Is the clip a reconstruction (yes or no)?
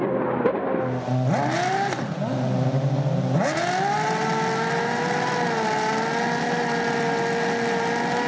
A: no